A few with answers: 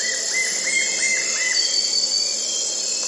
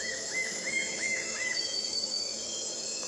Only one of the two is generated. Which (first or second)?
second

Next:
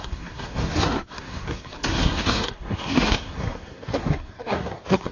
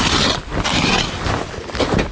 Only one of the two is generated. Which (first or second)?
first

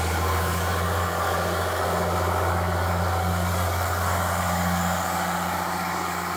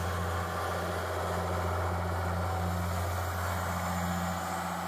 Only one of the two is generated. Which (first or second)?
first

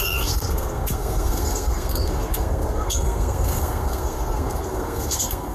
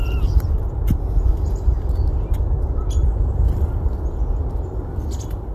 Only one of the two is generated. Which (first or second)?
first